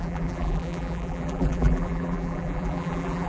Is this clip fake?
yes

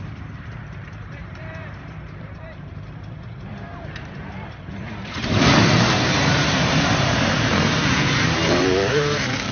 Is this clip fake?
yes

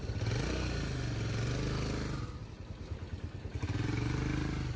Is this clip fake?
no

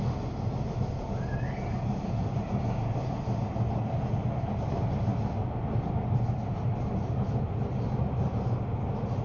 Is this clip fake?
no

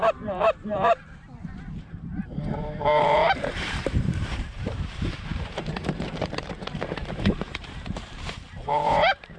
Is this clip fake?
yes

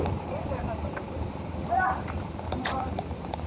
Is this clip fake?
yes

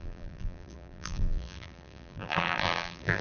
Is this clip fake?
yes